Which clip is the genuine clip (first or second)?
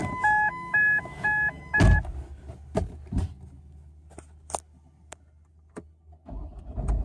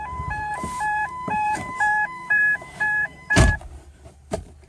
first